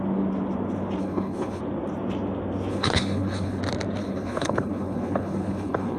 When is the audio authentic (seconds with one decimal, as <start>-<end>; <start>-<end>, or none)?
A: 0.0-1.0; 1.6-2.7; 3.6-4.0